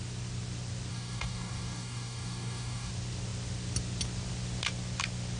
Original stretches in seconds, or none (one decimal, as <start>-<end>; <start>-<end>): 0.0-0.9; 2.9-5.4